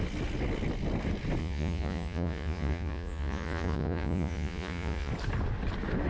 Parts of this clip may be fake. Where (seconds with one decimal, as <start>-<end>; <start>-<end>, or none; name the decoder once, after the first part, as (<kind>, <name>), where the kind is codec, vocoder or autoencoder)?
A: 1.4-5.1 (vocoder, Vocos)